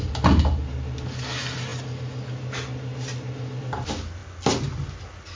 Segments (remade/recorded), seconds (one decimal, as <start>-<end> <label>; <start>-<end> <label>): 0.0-1.7 recorded; 1.7-3.6 remade; 3.6-5.4 recorded